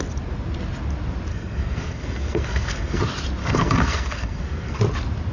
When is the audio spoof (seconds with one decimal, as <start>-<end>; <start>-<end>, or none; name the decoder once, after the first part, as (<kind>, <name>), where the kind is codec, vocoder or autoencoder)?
1.3-3.0 (codec, SNAC); 3.4-4.8